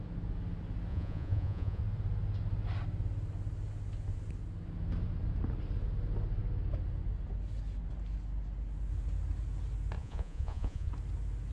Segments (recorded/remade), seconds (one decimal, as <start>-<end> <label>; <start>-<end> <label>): 0.0-0.9 recorded; 0.9-1.8 remade; 1.8-10.0 recorded; 10.0-10.9 remade; 10.9-11.5 recorded